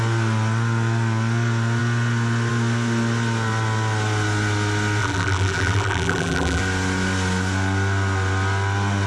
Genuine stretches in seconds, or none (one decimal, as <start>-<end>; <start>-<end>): 0.0-5.0; 6.6-9.1